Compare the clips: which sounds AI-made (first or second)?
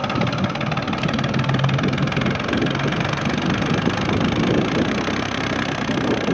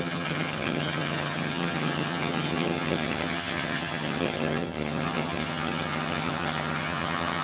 second